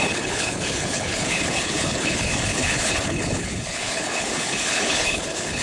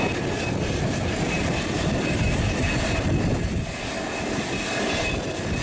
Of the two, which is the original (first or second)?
second